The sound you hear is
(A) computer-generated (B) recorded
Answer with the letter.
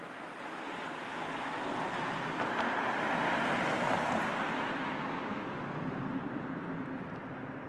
B